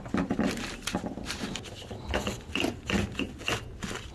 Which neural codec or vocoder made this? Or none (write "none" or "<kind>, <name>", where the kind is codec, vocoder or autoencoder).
none